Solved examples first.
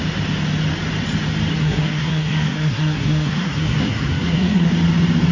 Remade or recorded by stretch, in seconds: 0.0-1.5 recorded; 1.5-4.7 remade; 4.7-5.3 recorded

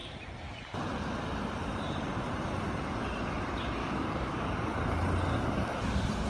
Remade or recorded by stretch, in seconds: 0.0-3.8 recorded; 3.8-4.8 remade; 4.8-6.3 recorded

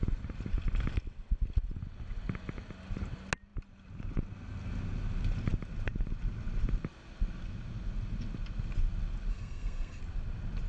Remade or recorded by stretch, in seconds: 0.0-9.3 recorded; 9.3-10.0 remade; 10.0-10.7 recorded